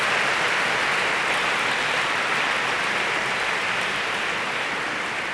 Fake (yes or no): yes